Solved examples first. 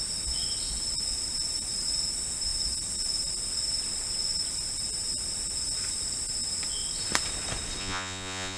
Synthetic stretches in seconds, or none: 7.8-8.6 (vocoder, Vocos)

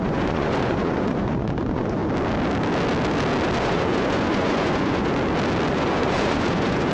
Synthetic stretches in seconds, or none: 0.0-2.0 (vocoder, Vocos); 3.6-5.1; 5.7-6.9